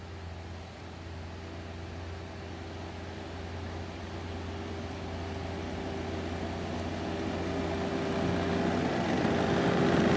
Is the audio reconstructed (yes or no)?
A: no